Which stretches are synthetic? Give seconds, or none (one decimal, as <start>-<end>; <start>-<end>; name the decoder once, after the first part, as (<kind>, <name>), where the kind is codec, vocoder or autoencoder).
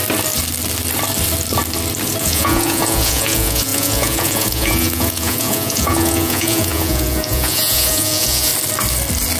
2.2-8.5 (vocoder, Vocos)